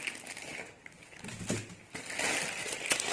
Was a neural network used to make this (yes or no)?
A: no